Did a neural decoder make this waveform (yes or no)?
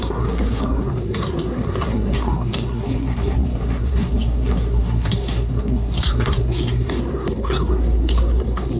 yes